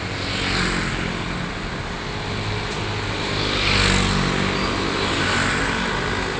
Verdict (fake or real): real